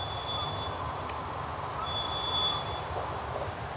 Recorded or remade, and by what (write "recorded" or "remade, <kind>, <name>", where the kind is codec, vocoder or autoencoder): recorded